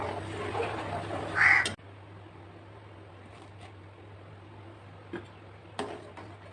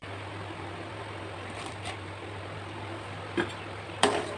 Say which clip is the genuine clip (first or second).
first